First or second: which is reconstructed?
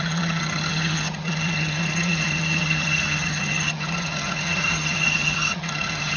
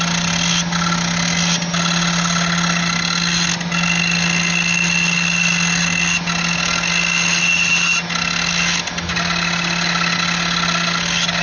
first